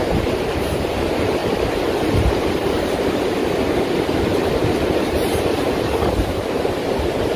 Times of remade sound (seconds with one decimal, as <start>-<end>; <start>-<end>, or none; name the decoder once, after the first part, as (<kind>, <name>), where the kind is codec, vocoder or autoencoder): 0.0-1.4 (vocoder, BigVGAN v2); 2.2-3.4; 5.6-7.4